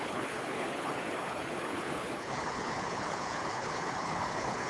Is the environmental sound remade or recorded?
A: remade